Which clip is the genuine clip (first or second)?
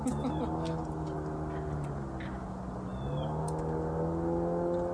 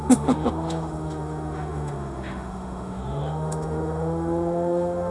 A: first